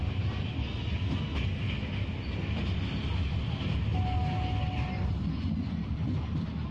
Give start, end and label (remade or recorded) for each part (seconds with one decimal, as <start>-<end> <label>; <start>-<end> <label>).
0.0-6.7 recorded